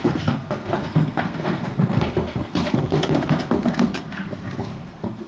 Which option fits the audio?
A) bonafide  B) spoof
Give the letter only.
B